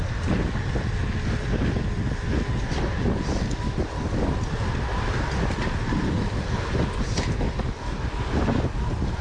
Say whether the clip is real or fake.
real